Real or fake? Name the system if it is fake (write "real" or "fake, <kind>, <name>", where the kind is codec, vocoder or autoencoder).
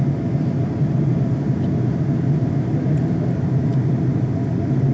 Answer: real